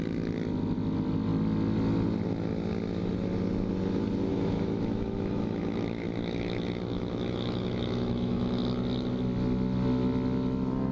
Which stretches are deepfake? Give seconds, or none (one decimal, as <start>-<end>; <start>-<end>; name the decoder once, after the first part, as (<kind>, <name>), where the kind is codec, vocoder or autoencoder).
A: 4.3-8.6 (autoencoder, DAC-VAE)